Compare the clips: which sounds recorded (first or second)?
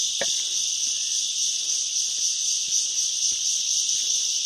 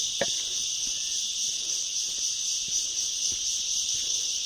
first